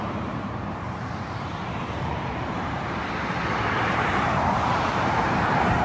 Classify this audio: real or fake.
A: fake